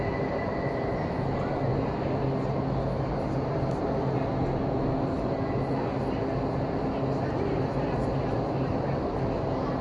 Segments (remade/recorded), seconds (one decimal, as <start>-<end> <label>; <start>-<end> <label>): 0.0-9.8 recorded